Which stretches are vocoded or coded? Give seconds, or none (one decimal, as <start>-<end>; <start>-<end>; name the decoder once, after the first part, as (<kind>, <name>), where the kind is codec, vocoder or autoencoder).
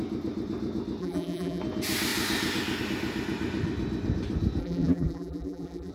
1.0-1.6 (vocoder, BigVGAN v2); 4.6-5.9